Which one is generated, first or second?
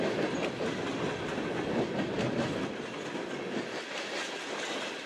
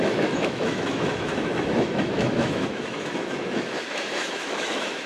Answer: second